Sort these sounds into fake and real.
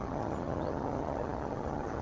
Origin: fake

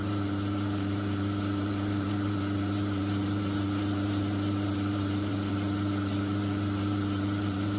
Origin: fake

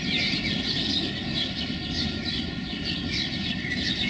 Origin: real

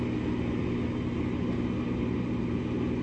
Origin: real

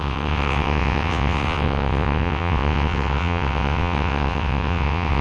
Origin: fake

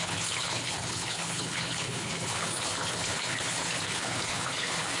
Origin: fake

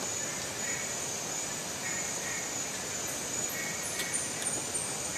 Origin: real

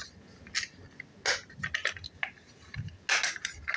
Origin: real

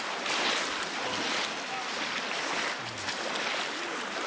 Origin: real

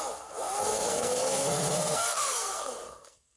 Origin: fake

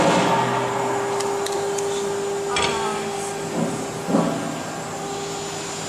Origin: real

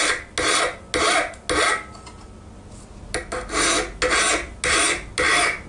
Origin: real